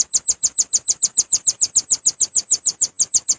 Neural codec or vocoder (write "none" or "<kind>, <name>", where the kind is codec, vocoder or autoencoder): vocoder, BigVGAN v2